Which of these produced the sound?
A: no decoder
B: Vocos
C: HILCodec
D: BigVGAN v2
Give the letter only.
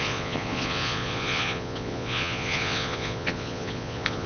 B